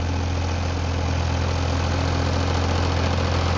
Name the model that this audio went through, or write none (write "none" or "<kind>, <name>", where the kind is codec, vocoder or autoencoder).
none